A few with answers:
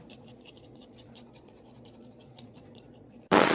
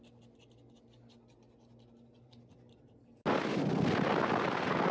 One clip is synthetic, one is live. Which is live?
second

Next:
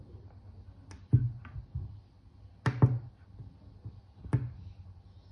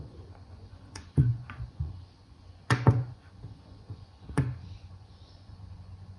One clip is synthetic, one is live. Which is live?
first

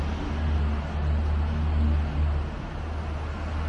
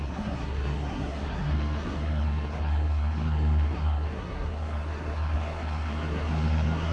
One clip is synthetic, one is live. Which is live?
first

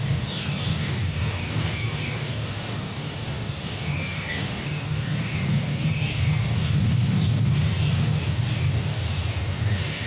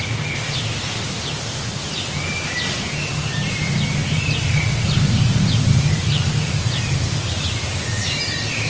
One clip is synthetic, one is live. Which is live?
second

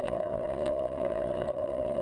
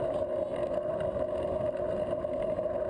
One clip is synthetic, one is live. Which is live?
second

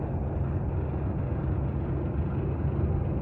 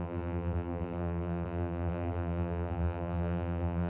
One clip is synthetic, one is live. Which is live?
first